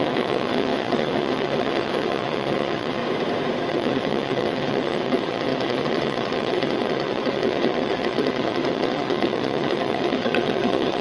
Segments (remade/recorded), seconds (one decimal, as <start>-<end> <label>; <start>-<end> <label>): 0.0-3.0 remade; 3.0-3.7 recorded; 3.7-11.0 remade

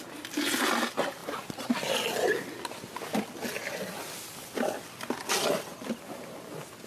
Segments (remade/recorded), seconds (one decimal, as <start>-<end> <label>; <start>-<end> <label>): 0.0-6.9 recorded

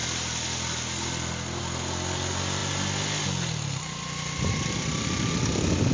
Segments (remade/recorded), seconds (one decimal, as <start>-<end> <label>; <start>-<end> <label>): 0.0-5.9 recorded